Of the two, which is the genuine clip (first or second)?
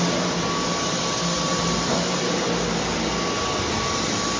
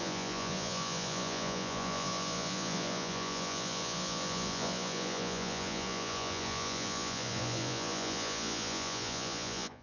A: first